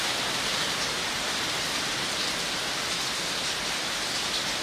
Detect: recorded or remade recorded